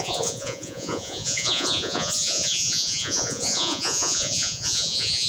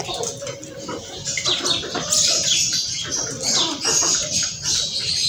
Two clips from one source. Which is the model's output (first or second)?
first